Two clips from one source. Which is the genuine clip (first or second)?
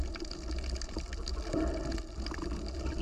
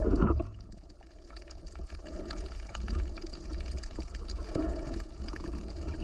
first